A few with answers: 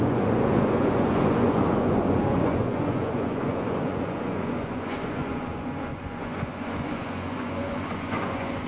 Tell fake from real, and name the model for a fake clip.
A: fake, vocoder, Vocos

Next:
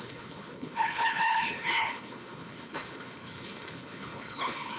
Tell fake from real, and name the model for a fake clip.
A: fake, codec, HILCodec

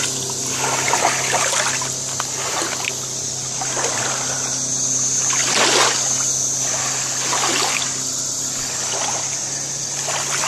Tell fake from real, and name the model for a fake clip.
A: real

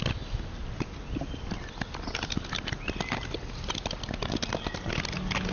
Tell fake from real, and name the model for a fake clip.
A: real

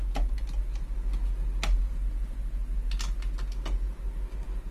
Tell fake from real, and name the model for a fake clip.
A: real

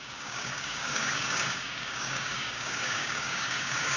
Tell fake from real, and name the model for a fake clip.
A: fake, codec, DAC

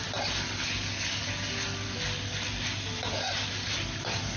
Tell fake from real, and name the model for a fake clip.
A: real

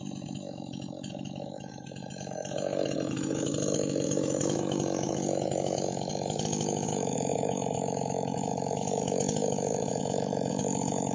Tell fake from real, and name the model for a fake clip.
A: fake, autoencoder, DAC-VAE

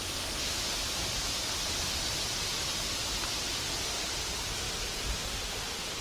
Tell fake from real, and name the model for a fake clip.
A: fake, vocoder, BigVGAN v2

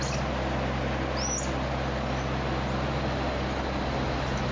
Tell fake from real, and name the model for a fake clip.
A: real